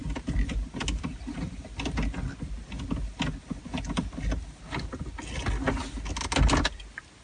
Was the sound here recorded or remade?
recorded